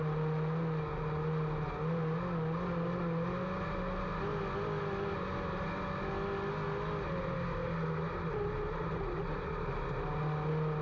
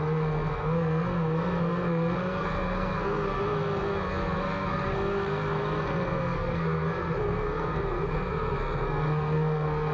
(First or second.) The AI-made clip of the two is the second